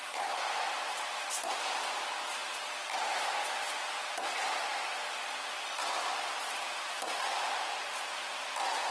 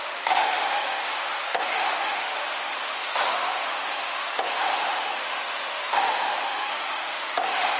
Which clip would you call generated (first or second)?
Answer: second